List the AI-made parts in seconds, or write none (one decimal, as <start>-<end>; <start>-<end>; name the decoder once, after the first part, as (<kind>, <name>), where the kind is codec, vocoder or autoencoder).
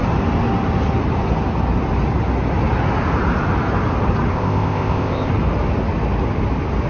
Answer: 4.3-5.3 (codec, ZipCodec)